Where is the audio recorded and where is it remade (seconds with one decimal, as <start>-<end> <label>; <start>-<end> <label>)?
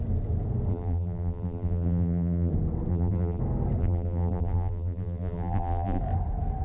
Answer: 0.0-0.7 recorded; 0.7-2.5 remade; 2.5-2.9 recorded; 2.9-3.4 remade; 3.4-3.8 recorded; 3.8-6.0 remade; 6.0-6.6 recorded